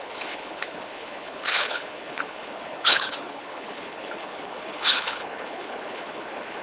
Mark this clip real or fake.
fake